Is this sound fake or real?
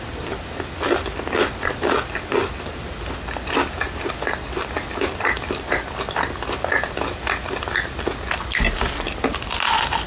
real